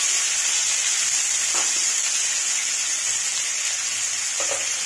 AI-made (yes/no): no